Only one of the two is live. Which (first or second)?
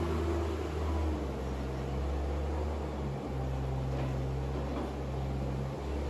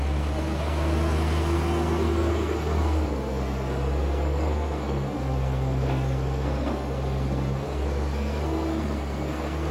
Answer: first